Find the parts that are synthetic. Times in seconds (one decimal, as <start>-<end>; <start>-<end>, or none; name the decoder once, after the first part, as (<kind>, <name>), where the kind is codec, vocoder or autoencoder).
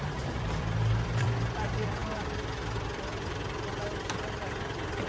0.0-5.1 (vocoder, BigVGAN v2)